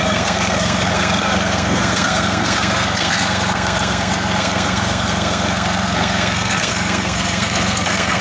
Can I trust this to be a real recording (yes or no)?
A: no